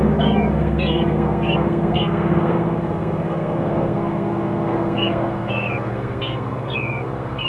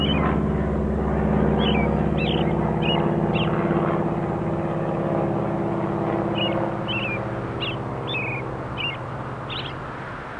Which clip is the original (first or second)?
second